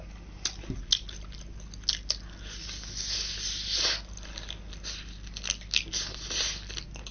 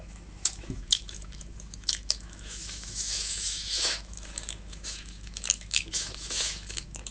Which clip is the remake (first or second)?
second